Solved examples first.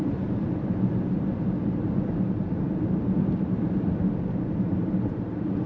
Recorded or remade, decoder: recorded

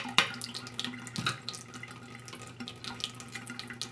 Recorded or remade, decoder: recorded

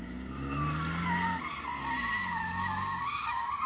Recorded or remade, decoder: recorded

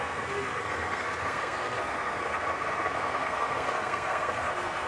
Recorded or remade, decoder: remade, codec, SNAC